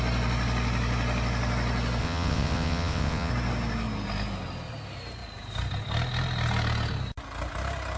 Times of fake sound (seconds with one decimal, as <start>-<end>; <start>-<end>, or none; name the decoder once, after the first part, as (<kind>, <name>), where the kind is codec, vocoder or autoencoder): 2.0-3.3 (vocoder, WaveNeXt)